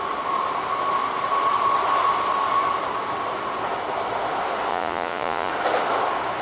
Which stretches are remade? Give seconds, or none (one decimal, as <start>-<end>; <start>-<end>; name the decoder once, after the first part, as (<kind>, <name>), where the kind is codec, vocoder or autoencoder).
4.7-5.5 (vocoder, Vocos)